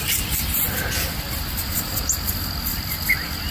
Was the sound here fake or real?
real